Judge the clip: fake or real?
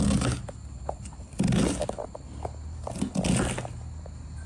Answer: real